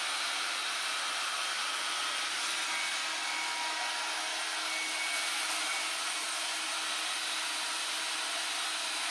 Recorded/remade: recorded